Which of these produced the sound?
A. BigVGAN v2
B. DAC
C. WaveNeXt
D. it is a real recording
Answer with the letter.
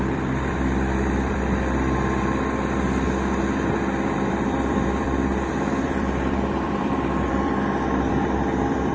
A